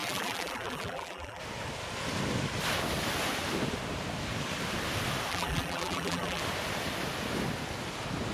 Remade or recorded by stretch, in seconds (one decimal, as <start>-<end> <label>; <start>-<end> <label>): 0.0-1.4 remade; 1.4-5.3 recorded; 5.3-6.4 remade; 6.4-8.3 recorded